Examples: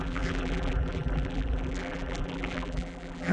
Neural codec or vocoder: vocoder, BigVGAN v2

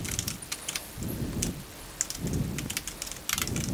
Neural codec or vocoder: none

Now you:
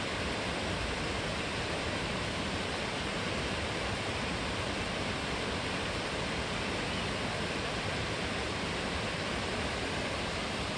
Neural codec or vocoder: vocoder, BigVGAN v2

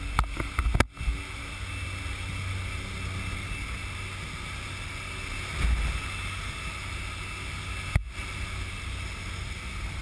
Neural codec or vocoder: none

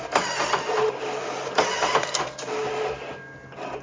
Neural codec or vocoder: vocoder, BigVGAN v2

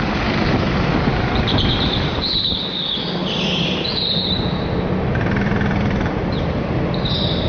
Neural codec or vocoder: vocoder, BigVGAN v2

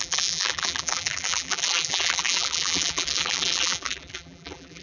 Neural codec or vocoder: vocoder, BigVGAN v2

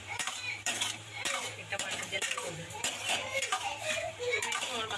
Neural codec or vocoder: vocoder, BigVGAN v2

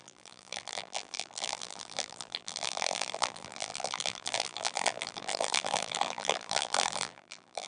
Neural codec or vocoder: vocoder, BigVGAN v2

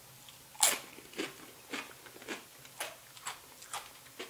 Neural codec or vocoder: none